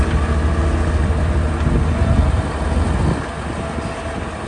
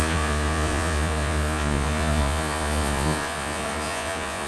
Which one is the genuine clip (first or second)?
first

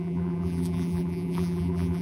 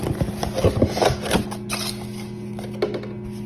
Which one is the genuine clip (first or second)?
second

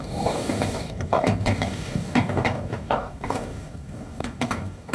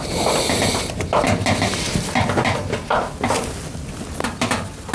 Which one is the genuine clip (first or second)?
second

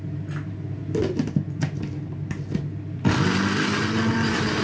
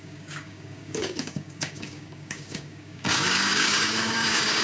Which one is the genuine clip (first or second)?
first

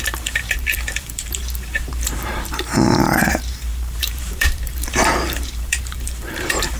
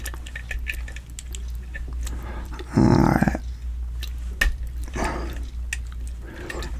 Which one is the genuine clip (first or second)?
second